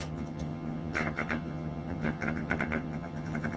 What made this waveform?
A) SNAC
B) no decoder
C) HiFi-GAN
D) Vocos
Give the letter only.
C